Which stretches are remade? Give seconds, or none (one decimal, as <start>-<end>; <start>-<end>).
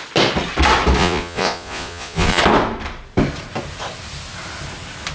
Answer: 1.0-2.4